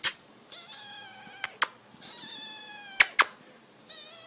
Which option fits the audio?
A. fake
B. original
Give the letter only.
B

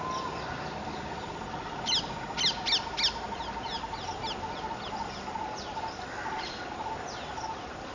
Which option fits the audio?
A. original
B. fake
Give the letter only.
A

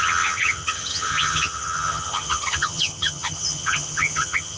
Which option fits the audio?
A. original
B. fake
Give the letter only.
B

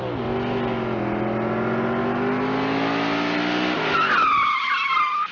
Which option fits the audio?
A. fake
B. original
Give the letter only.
B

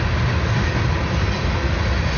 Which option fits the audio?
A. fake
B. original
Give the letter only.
B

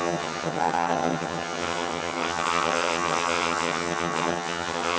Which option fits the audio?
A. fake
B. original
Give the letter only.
A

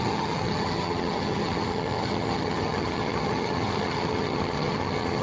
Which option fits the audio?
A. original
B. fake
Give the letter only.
B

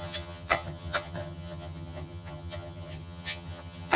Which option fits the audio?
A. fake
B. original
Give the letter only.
A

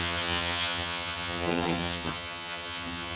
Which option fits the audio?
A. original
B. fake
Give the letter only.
B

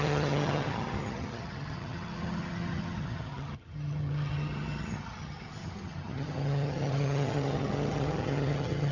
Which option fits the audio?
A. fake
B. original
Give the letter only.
A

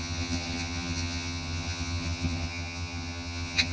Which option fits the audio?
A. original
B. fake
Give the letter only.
B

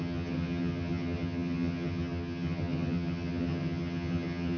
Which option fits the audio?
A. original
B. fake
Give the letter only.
B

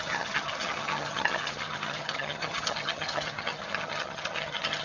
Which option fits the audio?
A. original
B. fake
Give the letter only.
B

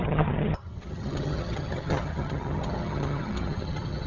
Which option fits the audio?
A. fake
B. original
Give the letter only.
A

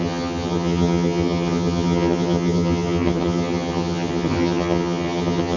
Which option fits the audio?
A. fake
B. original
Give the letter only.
A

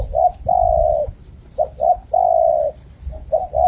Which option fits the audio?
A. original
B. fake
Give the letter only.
A